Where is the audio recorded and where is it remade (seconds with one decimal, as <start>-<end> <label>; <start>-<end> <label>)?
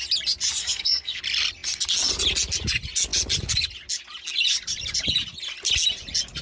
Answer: 0.0-0.6 recorded; 0.6-1.2 remade; 1.2-6.4 recorded